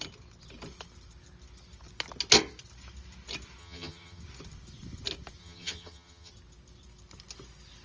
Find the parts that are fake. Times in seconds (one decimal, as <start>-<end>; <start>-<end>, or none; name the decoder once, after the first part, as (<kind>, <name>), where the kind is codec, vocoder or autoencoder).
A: 3.6-4.2 (vocoder, HiFi-GAN); 5.4-6.3